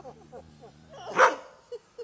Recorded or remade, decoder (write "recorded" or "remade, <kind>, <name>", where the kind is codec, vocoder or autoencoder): recorded